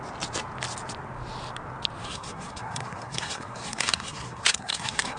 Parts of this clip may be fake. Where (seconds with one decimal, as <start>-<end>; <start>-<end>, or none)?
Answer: 2.0-5.2